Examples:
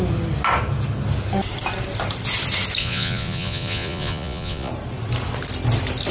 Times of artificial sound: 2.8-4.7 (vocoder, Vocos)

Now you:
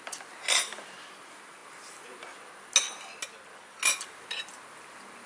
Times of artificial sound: none